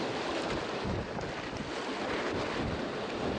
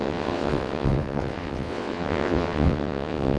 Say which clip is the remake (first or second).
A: second